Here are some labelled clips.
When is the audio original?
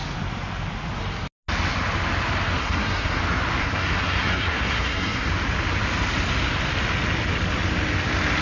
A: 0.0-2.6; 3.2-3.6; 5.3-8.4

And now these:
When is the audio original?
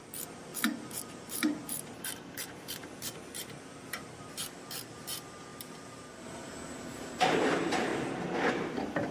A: 7.9-8.5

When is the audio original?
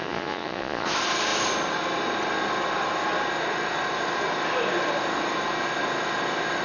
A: 0.9-6.6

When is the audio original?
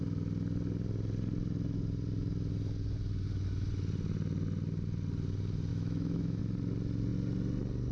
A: 0.0-5.7; 6.4-7.9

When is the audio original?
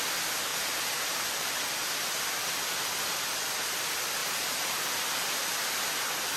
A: 0.0-0.5; 1.5-4.2; 4.9-6.4